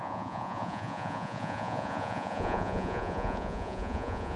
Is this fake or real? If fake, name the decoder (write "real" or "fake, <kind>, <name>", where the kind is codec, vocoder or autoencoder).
fake, vocoder, Vocos